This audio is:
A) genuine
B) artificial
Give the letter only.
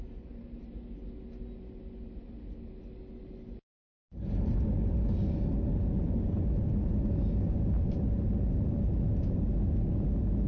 A